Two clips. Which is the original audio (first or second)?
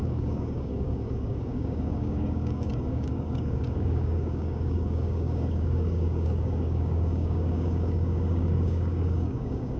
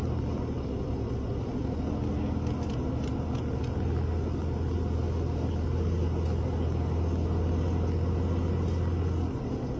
second